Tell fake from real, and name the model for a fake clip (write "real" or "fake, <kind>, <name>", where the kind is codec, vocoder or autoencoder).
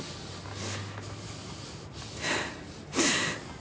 real